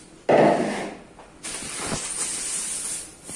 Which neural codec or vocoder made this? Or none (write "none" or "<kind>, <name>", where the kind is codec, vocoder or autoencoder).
none